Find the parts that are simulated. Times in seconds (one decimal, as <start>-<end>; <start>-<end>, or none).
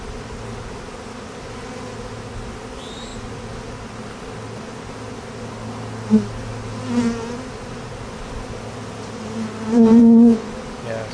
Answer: 10.0-10.5